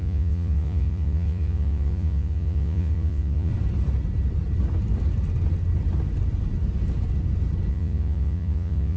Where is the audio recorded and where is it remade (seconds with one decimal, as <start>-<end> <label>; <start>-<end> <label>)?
0.0-3.5 remade; 3.5-7.7 recorded; 7.7-9.0 remade